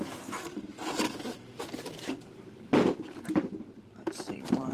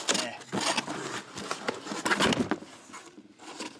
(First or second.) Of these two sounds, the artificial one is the first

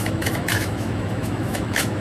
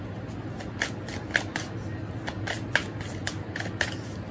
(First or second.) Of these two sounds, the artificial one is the first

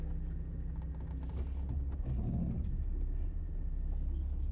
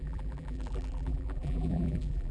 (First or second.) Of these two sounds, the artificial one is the second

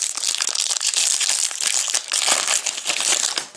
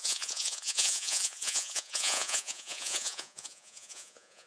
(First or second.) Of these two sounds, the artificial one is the second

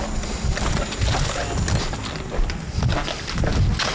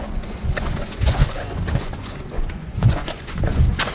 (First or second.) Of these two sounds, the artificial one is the second